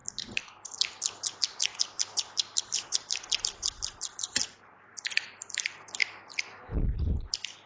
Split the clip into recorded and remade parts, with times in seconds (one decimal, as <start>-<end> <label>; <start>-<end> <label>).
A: 0.0-7.7 recorded